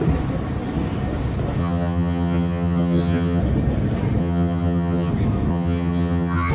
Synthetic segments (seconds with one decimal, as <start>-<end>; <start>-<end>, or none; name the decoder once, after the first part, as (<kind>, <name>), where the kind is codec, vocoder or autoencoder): 1.6-3.4 (vocoder, HiFi-GAN); 4.2-5.1; 5.5-6.5